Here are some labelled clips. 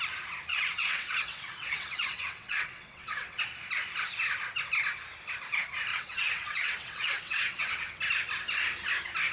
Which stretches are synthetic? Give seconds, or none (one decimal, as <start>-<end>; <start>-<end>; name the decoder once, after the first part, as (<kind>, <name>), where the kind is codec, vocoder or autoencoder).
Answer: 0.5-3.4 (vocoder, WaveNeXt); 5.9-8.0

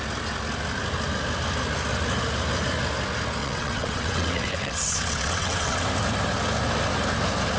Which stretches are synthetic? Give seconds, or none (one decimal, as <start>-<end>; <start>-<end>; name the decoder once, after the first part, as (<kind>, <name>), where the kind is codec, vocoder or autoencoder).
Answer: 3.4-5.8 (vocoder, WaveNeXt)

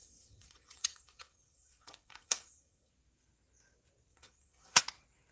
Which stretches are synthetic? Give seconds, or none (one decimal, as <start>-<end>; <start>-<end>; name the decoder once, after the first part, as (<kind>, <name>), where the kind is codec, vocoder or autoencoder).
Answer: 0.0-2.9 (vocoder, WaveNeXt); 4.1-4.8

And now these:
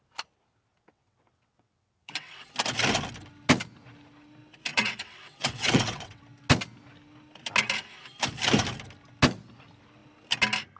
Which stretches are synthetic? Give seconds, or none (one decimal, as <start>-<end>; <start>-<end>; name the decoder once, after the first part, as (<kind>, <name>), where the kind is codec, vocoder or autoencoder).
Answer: 0.7-2.5 (vocoder, WaveNeXt); 4.7-6.2

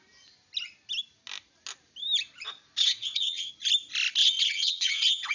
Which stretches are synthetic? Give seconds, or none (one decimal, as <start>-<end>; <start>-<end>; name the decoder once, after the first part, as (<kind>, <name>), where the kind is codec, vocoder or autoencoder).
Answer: 2.8-3.5 (vocoder, WaveNeXt); 4.2-5.3

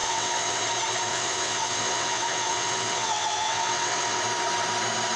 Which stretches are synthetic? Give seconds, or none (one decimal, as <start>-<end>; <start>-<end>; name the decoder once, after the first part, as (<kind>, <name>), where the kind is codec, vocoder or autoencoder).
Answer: 0.0-0.6 (vocoder, WaveNeXt); 1.1-4.2

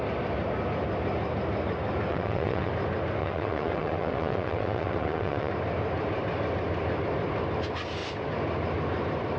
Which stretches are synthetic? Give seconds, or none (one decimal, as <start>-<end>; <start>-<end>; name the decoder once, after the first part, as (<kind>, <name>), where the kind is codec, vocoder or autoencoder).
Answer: 2.1-2.7 (vocoder, WaveNeXt); 3.2-5.5

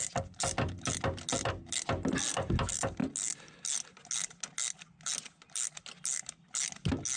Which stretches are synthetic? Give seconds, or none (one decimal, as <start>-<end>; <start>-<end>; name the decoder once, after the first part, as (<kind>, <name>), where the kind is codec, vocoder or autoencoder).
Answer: none